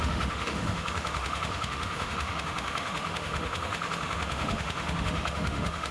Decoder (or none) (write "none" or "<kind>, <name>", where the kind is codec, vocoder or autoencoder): autoencoder, DAC-VAE